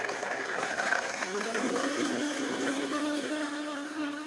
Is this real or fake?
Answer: fake